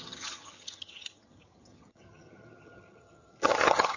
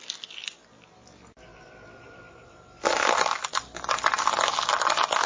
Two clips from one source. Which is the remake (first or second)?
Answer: first